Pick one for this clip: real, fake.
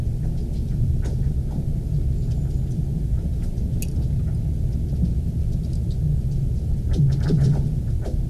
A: real